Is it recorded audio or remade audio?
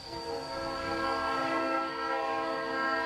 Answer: remade